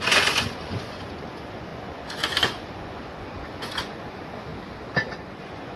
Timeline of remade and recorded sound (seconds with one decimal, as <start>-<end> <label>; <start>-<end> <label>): 0.0-4.5 remade; 4.5-5.1 recorded; 5.1-5.8 remade